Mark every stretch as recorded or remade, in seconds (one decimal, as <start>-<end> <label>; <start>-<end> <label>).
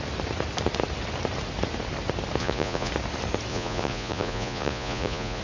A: 0.0-2.4 recorded; 2.4-2.9 remade; 2.9-3.5 recorded; 3.5-5.4 remade